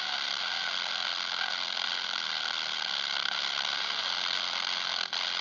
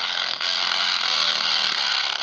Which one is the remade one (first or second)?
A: second